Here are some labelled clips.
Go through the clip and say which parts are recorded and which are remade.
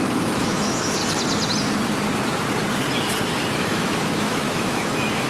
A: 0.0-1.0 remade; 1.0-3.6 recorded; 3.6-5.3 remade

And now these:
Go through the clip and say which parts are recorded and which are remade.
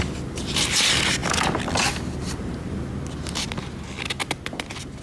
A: 0.0-5.0 recorded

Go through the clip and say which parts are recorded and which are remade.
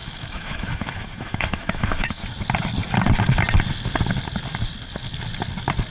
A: 0.0-2.2 remade; 2.2-5.9 recorded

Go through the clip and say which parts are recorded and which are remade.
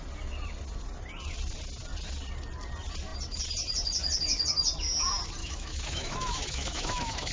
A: 0.0-5.4 recorded; 5.4-7.3 remade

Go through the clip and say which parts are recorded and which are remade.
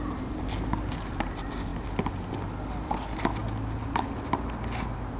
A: 0.0-5.2 recorded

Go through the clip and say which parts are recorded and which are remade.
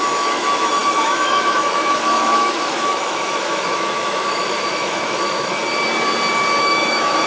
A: 0.0-5.6 remade; 5.6-6.6 recorded; 6.6-7.3 remade